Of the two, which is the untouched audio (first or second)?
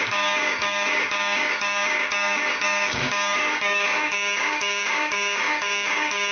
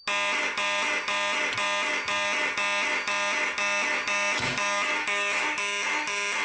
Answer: second